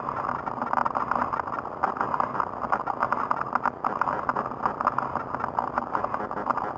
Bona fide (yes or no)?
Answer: yes